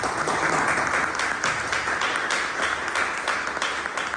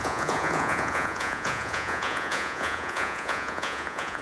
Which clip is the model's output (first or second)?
second